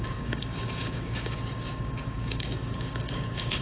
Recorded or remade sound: remade